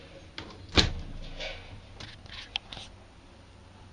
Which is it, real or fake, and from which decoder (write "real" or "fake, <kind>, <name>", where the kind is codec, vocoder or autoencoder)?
real